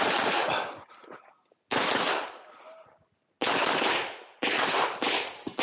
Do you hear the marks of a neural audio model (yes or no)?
no